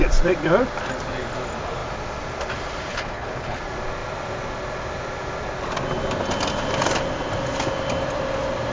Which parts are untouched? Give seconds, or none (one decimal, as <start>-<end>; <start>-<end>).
0.0-2.9; 3.6-8.7